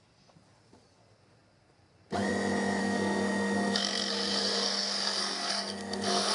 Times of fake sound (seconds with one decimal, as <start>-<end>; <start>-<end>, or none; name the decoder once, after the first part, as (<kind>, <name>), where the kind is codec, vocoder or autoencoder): 2.8-6.3 (codec, SNAC)